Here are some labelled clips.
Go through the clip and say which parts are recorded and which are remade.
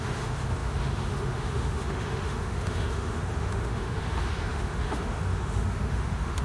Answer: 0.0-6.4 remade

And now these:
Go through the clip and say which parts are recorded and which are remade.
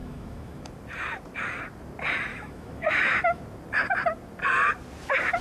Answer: 0.0-0.7 remade; 0.7-2.3 recorded; 2.3-3.4 remade; 3.4-5.4 recorded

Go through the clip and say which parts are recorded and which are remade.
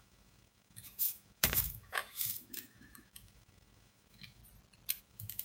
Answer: 0.0-4.4 remade; 4.4-5.0 recorded; 5.0-5.4 remade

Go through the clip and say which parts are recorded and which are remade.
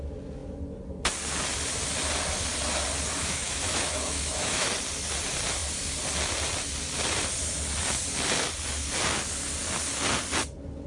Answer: 0.0-3.2 recorded; 3.2-4.7 remade; 4.7-10.9 recorded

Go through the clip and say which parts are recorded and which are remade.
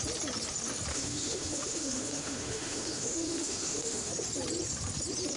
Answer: 0.0-0.9 recorded; 0.9-4.1 remade; 4.1-5.4 recorded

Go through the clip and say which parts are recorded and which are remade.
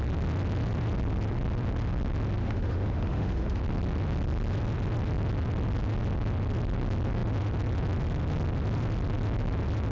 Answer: 0.0-2.4 recorded; 2.4-3.6 remade; 3.6-9.9 recorded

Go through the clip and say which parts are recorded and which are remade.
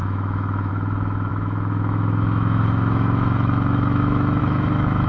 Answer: 0.0-5.1 remade